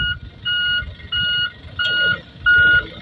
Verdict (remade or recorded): recorded